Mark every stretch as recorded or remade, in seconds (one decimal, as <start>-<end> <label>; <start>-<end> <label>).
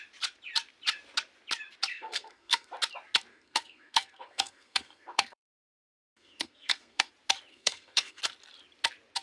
0.0-1.9 recorded; 1.9-2.7 remade; 2.7-3.3 recorded; 3.3-7.1 remade; 7.1-7.5 recorded; 7.5-8.2 remade; 8.2-9.2 recorded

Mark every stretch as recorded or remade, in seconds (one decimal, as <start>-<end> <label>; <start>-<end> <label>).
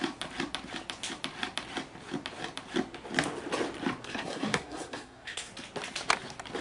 0.0-4.0 recorded; 4.0-5.5 remade; 5.5-6.6 recorded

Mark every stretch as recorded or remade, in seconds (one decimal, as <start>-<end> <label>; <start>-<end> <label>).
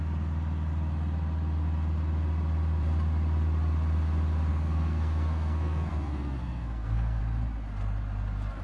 0.0-4.5 recorded; 4.5-7.2 remade; 7.2-8.6 recorded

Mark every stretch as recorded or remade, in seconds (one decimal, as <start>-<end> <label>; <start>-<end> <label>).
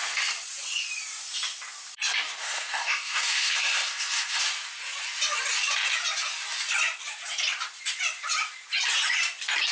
0.0-2.4 recorded; 2.4-4.4 remade; 4.4-9.7 recorded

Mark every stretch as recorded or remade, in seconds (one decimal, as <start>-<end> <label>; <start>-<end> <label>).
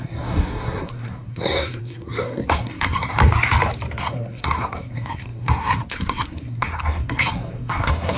0.0-3.2 remade; 3.2-4.0 recorded; 4.0-8.2 remade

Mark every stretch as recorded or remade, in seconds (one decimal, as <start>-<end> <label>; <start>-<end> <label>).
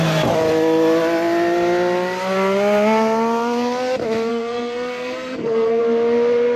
0.0-4.3 recorded; 4.3-5.8 remade; 5.8-6.6 recorded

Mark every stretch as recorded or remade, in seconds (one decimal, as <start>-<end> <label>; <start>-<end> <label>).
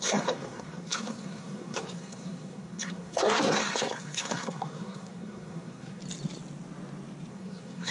0.0-6.0 remade; 6.0-7.3 recorded; 7.3-7.9 remade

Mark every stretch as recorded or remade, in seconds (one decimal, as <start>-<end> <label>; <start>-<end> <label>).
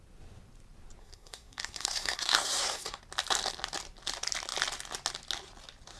0.0-1.0 recorded; 1.0-3.0 remade; 3.0-6.0 recorded